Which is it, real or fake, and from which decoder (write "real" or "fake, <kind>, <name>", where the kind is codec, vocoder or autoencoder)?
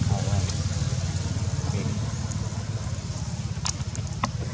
real